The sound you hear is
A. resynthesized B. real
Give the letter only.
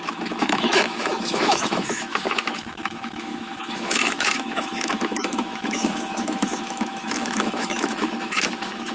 A